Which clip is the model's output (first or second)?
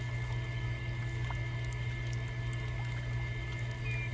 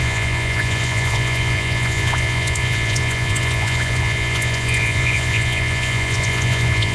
second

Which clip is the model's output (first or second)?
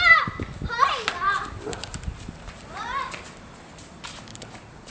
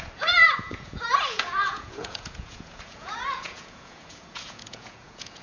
second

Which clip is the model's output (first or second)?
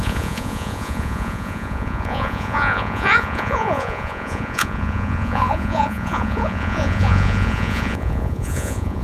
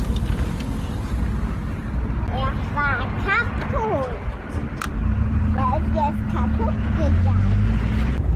first